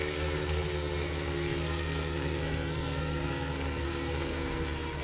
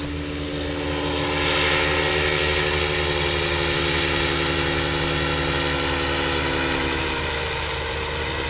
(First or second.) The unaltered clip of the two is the second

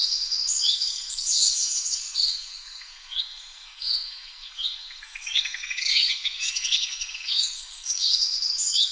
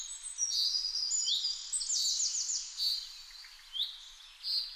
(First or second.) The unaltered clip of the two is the second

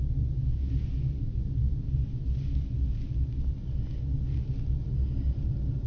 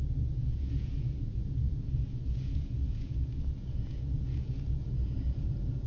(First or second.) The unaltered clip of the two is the first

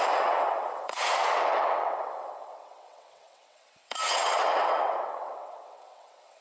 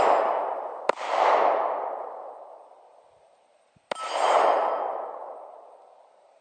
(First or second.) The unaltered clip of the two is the second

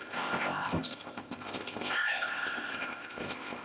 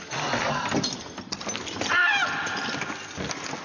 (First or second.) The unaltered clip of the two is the second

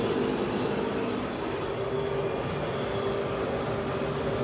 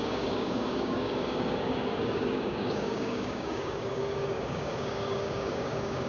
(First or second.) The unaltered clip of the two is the first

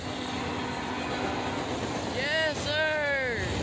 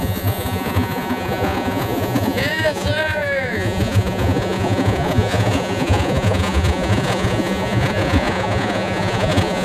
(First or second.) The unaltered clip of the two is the first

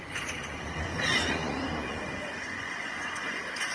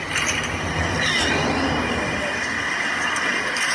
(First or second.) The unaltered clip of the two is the second